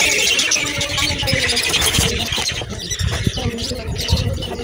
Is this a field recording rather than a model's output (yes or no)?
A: no